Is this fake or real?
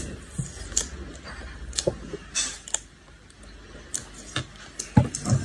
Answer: real